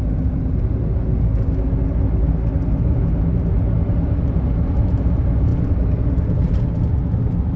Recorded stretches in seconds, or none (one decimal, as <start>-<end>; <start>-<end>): 0.9-4.2; 5.5-6.6